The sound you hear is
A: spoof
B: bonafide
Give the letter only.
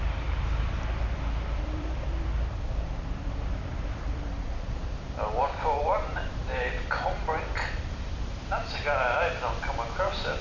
A